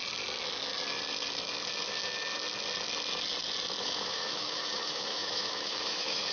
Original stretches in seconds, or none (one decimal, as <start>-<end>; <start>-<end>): 0.0-3.8